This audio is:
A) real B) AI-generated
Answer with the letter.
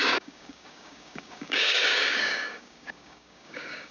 B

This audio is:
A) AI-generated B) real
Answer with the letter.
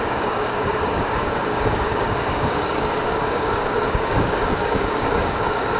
A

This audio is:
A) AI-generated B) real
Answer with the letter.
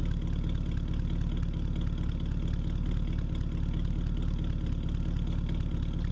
B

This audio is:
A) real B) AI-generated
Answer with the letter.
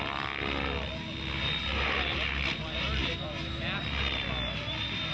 A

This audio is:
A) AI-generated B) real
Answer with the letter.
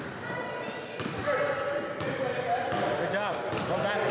B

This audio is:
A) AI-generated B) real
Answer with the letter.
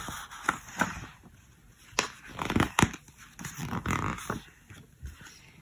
B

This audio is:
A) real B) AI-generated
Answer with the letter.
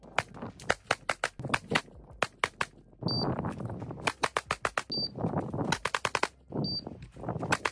A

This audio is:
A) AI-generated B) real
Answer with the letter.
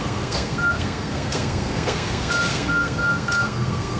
A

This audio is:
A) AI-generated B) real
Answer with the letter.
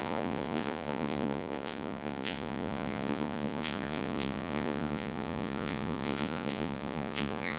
A